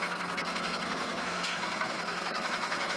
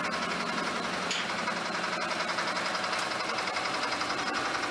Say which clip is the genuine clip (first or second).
second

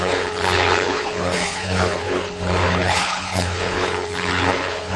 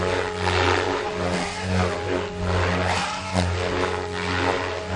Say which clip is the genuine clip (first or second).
second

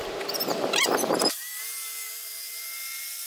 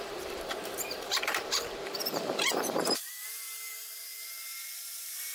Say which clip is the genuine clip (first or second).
first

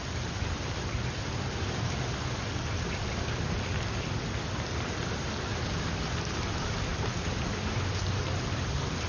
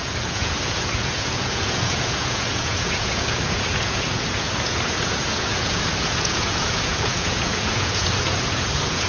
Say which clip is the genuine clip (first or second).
first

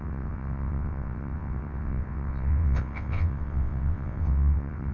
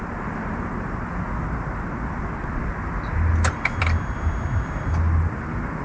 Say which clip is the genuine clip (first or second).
second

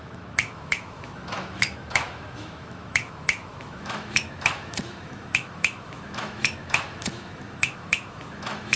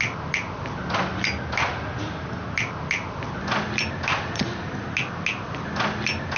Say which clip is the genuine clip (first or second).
second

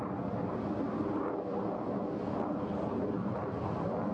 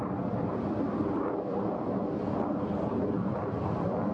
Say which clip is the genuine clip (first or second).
first